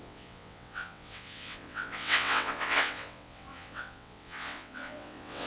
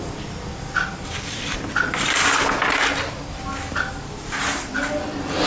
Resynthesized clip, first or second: first